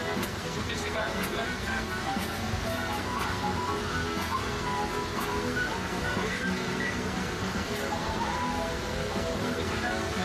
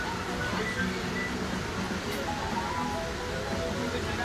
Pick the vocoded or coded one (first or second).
first